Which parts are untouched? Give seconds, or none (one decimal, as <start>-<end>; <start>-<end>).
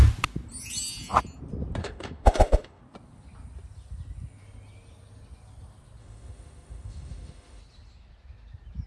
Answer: 0.0-1.8; 2.8-6.0; 7.6-8.9